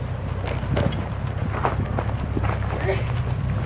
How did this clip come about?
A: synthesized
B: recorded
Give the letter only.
B